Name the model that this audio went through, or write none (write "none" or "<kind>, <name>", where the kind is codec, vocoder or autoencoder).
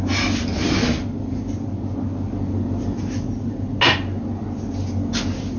none